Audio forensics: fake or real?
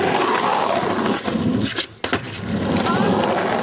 real